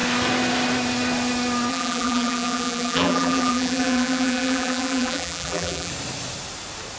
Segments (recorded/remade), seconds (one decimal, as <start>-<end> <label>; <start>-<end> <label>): 0.0-1.7 recorded; 1.7-5.9 remade; 5.9-7.0 recorded